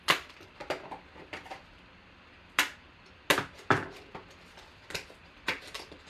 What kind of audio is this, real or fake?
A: real